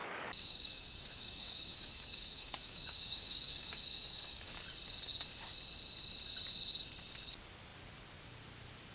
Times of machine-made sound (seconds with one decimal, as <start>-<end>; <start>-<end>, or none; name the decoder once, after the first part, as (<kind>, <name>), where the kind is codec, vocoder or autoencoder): 0.0-4.6 (codec, DAC)